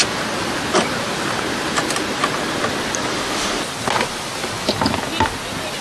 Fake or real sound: real